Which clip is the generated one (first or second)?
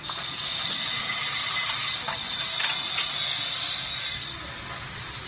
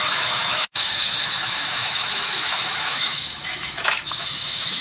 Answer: second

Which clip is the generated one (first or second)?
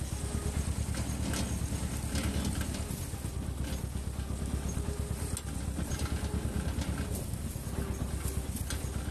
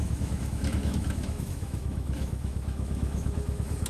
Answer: second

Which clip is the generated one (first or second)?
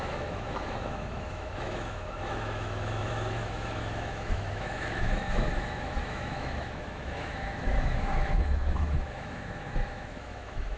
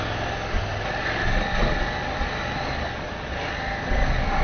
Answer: first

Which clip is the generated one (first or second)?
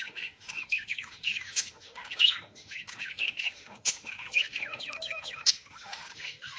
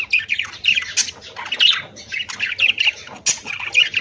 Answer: first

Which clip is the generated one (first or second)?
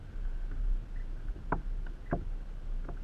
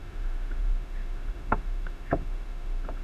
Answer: second